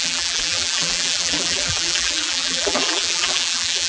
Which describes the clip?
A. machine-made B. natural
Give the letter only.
A